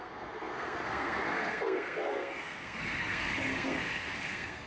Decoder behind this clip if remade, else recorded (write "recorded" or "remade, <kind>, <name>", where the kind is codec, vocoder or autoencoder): remade, codec, SNAC